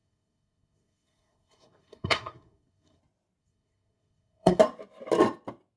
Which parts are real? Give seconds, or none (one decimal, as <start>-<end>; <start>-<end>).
3.0-3.4; 4.6-5.8